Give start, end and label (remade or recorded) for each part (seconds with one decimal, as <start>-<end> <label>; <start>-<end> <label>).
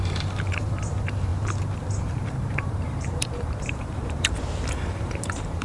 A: 0.0-5.6 remade